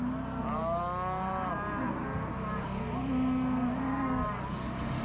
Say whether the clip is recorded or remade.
recorded